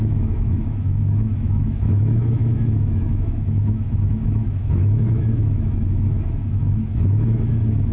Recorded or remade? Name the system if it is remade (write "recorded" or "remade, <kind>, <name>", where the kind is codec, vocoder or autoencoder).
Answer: remade, autoencoder, DAC-VAE